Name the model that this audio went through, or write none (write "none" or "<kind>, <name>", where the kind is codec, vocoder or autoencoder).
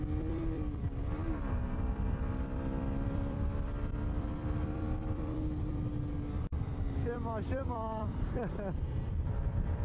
vocoder, BigVGAN v2